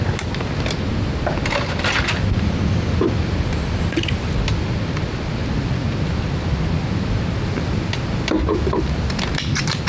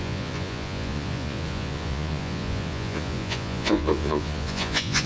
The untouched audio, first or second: first